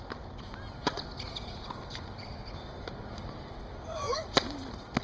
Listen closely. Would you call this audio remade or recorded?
recorded